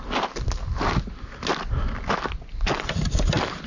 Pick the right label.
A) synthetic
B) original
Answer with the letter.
B